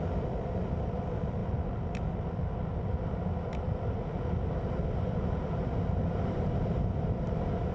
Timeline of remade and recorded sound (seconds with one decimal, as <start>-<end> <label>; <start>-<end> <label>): 0.0-7.7 recorded